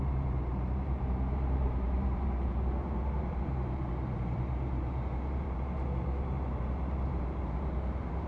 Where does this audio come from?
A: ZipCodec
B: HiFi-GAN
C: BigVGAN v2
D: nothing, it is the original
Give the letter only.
C